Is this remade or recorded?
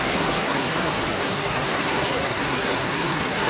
remade